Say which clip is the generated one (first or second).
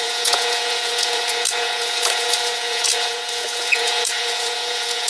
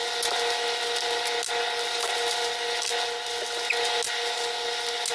first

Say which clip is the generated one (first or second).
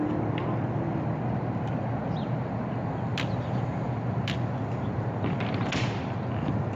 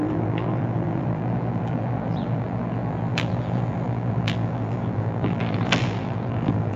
second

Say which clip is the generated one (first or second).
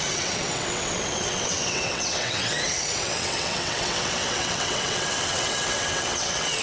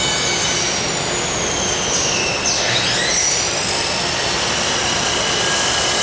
first